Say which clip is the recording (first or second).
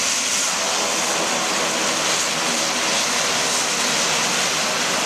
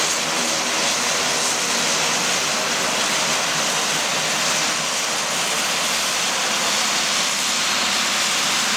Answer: second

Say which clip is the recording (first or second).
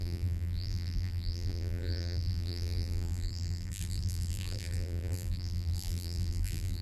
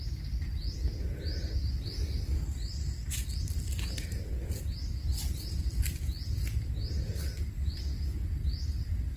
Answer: second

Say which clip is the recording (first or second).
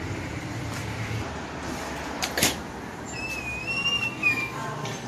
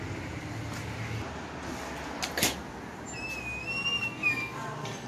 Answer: second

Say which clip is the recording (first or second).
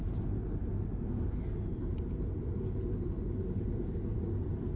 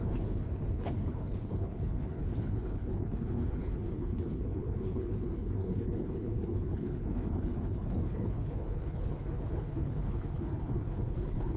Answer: first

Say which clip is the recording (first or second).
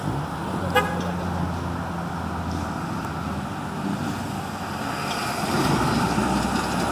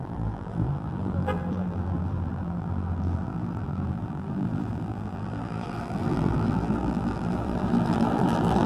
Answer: first